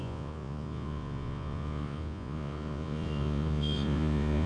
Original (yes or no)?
no